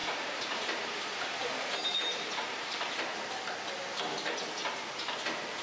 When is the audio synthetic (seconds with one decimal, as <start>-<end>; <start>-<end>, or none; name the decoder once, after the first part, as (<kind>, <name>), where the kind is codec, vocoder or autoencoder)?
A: 0.0-3.4 (vocoder, BigVGAN v2)